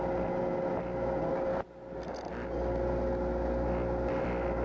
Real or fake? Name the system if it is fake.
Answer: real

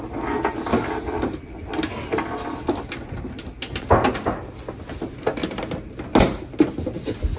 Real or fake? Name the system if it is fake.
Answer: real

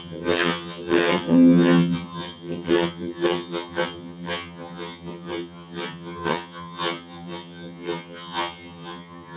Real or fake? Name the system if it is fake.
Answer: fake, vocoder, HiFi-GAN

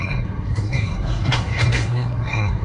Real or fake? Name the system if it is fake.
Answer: fake, codec, SNAC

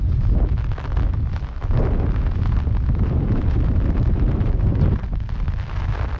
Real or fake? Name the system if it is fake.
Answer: real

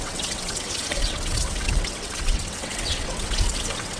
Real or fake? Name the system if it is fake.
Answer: fake, vocoder, WaveNeXt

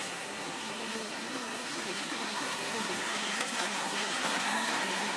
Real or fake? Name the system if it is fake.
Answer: fake, codec, SNAC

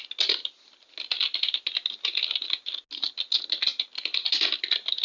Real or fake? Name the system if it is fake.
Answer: real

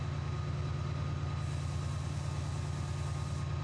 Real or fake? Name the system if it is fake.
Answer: real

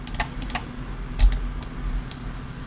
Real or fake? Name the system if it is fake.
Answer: real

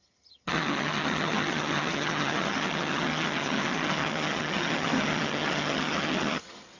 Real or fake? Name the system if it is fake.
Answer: fake, vocoder, HiFi-GAN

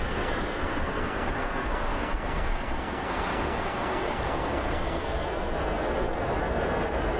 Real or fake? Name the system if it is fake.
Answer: fake, codec, SNAC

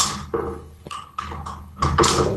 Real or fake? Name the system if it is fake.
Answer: fake, codec, HILCodec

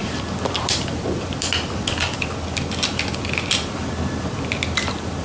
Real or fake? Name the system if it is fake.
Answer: fake, vocoder, BigVGAN v2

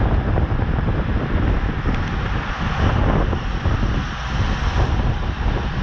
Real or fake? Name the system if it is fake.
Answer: real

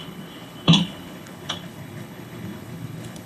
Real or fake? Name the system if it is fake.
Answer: fake, codec, HILCodec